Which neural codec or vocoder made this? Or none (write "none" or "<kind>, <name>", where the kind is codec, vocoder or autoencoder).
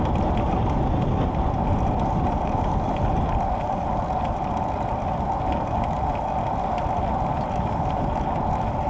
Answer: none